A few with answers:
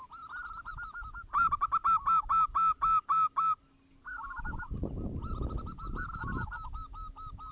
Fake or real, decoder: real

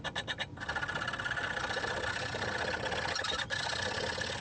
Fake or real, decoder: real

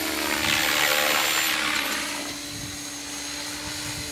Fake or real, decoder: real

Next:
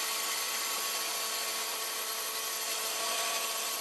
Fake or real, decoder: real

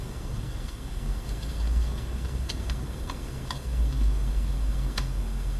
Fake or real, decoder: fake, codec, SNAC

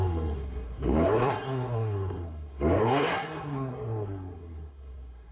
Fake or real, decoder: fake, codec, SNAC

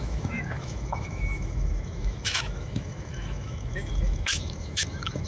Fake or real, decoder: fake, autoencoder, DAC-VAE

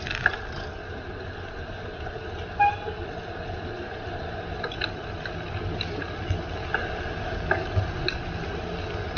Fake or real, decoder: real